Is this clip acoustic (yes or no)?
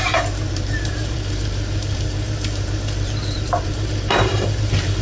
no